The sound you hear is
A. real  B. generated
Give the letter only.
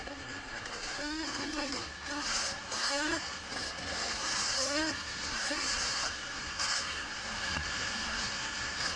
B